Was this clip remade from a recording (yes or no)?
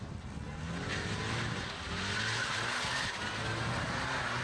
no